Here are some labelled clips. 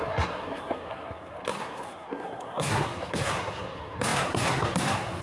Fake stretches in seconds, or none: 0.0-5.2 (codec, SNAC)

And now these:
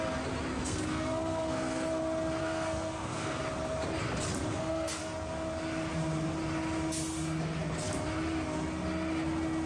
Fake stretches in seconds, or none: 0.5-2.0 (codec, SNAC); 2.4-3.4; 4.5-5.0

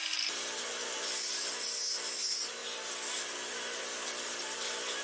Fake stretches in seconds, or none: none

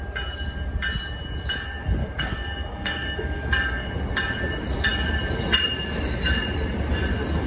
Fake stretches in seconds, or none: 2.0-3.9 (codec, DAC)

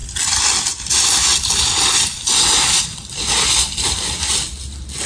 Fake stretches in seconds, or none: 0.0-0.8 (vocoder, BigVGAN v2); 1.3-2.8

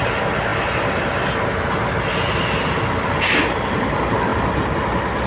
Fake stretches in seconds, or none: none

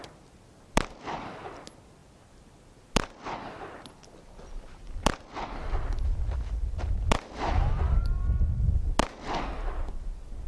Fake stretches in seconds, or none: none

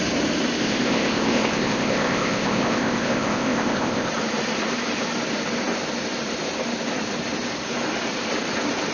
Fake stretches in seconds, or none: 0.6-4.1 (codec, ZipCodec)